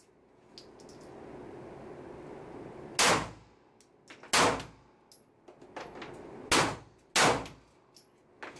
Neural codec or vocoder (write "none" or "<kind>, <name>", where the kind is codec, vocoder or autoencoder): none